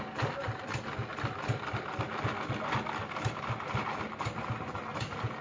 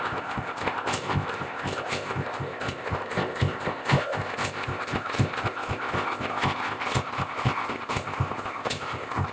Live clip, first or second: first